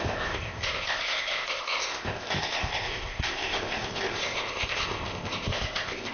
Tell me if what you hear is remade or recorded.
remade